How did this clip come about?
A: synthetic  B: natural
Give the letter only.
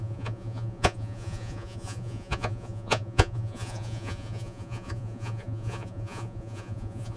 A